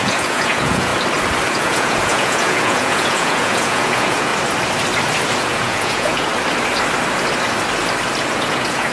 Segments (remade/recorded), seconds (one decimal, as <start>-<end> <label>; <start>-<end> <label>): 0.0-0.9 remade; 0.9-1.5 recorded; 1.5-4.3 remade; 4.3-5.4 recorded; 5.4-6.3 remade; 6.3-8.3 recorded; 8.3-8.9 remade